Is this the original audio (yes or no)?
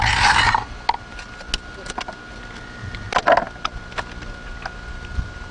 yes